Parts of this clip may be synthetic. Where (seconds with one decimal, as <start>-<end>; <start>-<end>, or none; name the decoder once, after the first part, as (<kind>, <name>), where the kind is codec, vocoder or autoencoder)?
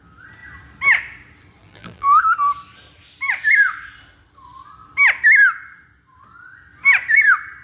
1.6-2.2 (vocoder, BigVGAN v2)